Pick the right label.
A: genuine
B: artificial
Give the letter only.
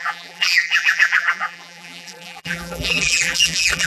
B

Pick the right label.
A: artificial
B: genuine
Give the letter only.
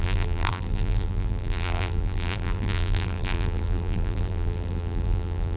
A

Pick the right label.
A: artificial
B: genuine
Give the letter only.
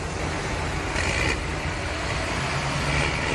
B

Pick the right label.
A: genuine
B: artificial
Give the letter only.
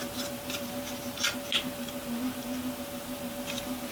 A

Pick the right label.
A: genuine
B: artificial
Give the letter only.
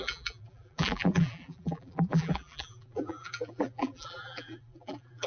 B